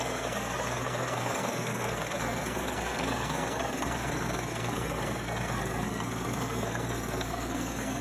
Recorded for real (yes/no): no